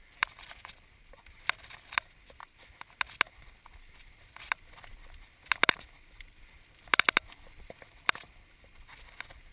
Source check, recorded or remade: recorded